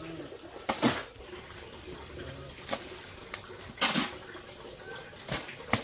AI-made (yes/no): no